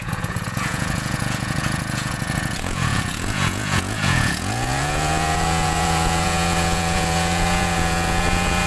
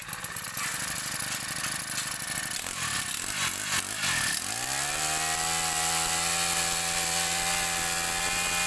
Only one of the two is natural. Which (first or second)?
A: second